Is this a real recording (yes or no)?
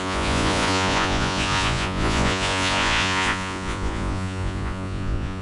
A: no